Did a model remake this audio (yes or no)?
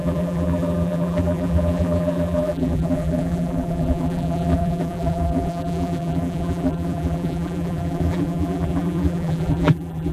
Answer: yes